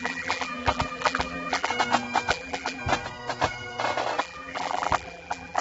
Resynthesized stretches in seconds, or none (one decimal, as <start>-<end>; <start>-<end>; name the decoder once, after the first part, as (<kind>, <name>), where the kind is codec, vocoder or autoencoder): 0.0-1.7 (vocoder, BigVGAN v2); 2.3-2.8; 4.2-5.6